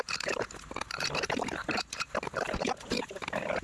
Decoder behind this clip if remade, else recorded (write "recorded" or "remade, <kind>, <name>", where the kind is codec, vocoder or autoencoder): remade, vocoder, BigVGAN v2